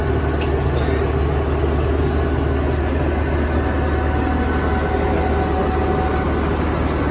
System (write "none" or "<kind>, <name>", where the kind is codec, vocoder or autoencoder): none